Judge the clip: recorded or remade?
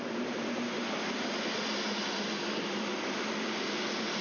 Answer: recorded